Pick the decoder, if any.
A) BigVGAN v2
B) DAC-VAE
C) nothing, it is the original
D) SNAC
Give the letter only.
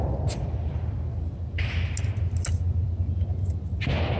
C